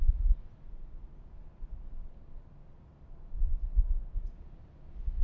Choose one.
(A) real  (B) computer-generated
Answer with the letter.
A